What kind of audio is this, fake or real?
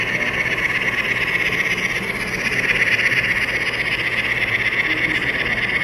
real